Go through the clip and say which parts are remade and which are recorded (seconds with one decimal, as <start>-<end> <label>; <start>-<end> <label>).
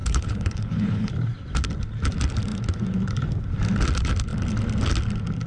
0.0-1.1 remade; 1.1-5.5 recorded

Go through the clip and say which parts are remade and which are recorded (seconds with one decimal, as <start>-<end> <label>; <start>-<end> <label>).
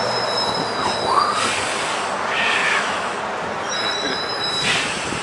0.0-2.6 recorded; 2.6-3.2 remade; 3.2-5.2 recorded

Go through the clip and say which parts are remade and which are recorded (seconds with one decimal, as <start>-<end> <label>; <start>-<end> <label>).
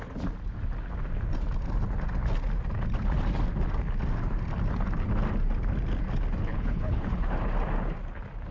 0.0-6.5 recorded; 6.5-7.3 remade; 7.3-8.5 recorded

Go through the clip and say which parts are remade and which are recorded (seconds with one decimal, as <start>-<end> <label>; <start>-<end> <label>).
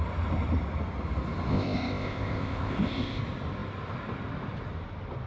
0.0-1.5 recorded; 1.5-3.2 remade; 3.2-5.3 recorded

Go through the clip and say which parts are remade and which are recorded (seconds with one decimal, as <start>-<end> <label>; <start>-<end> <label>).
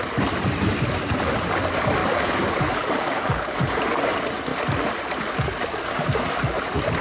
0.0-2.0 recorded; 2.0-3.6 remade; 3.6-7.0 recorded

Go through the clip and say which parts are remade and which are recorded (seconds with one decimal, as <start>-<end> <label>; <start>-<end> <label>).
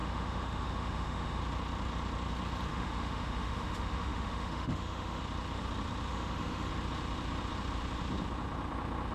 0.0-1.4 remade; 1.4-2.7 recorded; 2.7-5.2 remade; 5.2-6.1 recorded; 6.1-6.7 remade; 6.7-9.1 recorded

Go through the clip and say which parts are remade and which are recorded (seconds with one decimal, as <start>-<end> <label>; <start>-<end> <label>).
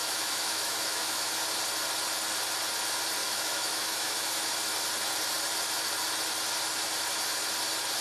0.0-1.3 remade; 1.3-3.2 recorded; 3.2-4.5 remade; 4.5-8.0 recorded